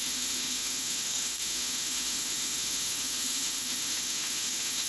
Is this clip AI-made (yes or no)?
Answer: yes